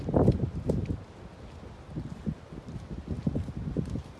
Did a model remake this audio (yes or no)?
no